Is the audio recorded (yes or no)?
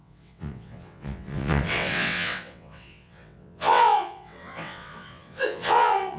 no